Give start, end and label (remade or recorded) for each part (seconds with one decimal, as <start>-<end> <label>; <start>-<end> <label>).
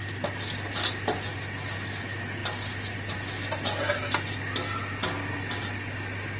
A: 0.0-6.4 recorded